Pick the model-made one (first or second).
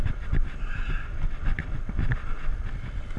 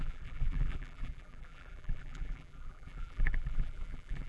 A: second